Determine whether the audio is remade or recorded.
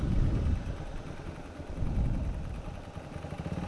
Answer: recorded